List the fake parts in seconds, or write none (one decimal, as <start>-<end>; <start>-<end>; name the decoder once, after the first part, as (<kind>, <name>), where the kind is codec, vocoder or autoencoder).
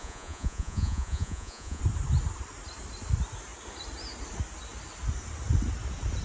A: 0.0-1.8 (vocoder, Vocos)